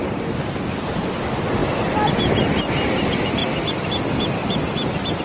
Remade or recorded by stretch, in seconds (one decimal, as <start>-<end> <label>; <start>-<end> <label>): 0.0-5.2 recorded